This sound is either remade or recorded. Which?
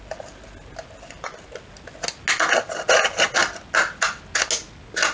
recorded